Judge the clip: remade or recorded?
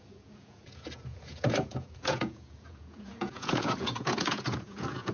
remade